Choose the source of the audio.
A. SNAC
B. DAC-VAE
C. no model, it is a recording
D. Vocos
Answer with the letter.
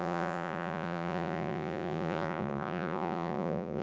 D